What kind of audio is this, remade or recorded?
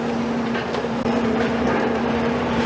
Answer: remade